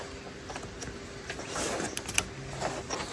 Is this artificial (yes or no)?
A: no